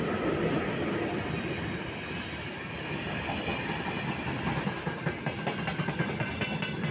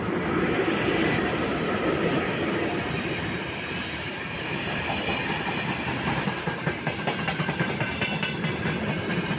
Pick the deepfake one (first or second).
second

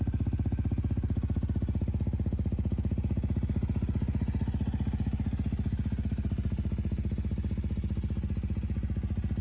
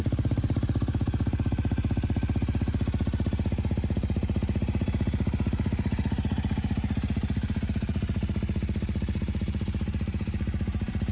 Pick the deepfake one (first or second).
second